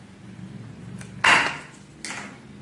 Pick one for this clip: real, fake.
real